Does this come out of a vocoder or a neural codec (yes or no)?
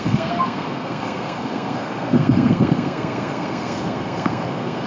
yes